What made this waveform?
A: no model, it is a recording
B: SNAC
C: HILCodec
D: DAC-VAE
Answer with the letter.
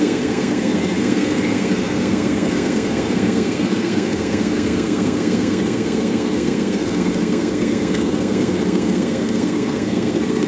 B